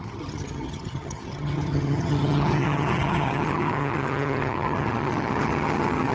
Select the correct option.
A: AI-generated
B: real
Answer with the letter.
A